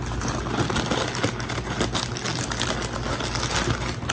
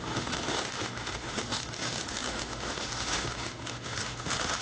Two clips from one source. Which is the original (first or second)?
first